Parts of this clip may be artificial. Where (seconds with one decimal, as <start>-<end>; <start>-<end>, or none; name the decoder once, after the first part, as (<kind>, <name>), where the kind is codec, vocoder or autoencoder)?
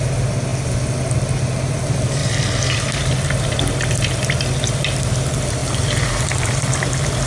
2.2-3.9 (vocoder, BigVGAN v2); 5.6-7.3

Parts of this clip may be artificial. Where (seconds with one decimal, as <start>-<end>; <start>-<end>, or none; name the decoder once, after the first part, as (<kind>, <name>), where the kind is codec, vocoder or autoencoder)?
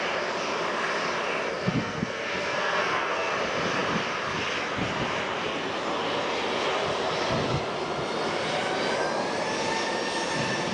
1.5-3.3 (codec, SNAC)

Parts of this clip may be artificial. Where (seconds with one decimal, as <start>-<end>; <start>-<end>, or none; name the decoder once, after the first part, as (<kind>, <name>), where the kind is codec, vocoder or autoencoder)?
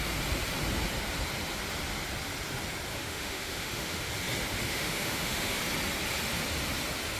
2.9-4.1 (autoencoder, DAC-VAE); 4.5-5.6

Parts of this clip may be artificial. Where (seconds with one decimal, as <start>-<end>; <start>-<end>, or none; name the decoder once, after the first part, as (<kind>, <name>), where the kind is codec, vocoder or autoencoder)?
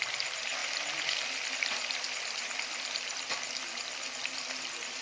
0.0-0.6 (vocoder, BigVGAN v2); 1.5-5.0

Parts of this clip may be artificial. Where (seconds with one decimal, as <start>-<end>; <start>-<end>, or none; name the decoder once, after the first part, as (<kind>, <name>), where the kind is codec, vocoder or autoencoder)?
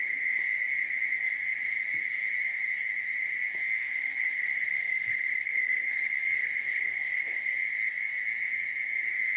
4.0-7.5 (codec, SNAC)